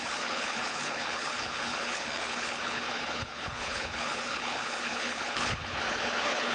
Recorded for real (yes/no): no